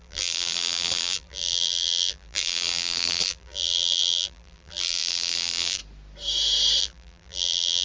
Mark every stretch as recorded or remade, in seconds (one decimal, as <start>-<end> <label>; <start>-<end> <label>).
0.0-5.8 remade; 5.8-6.8 recorded; 6.8-7.8 remade